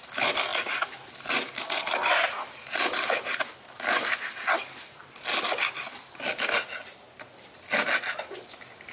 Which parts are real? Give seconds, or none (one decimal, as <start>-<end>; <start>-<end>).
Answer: 0.0-8.9